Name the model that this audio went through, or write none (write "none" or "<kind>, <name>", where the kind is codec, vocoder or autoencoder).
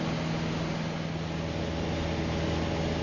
none